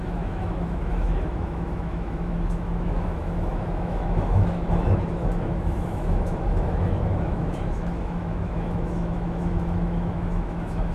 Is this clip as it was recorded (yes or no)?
no